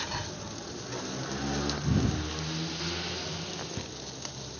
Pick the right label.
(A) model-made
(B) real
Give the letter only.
B